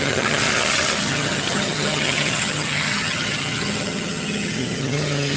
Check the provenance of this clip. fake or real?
fake